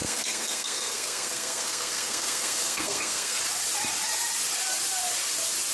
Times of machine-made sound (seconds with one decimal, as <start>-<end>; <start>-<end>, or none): 0.0-3.4